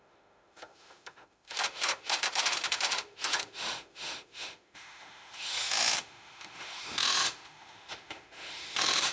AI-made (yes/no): yes